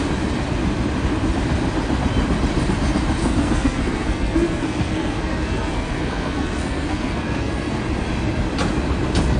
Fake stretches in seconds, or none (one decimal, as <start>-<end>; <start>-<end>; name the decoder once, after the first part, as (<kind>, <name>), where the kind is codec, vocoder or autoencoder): 3.2-7.8 (codec, SNAC)